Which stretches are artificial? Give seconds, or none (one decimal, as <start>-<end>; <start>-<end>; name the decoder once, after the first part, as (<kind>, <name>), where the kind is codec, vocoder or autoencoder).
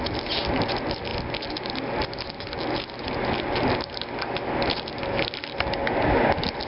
none